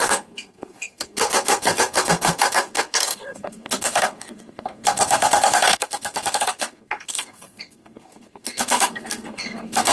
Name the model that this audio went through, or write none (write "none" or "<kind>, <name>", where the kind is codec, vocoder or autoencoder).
codec, SNAC